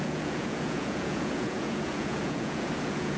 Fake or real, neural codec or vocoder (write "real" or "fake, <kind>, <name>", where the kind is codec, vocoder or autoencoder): fake, vocoder, Vocos